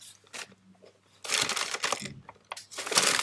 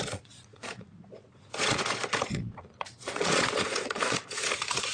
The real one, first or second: first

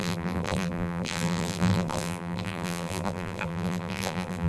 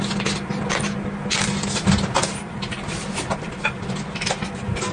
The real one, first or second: second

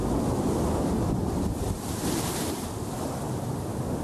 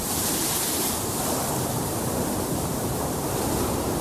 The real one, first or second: first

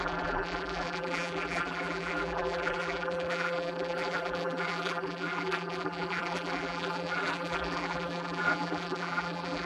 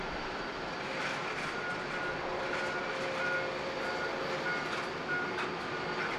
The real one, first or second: second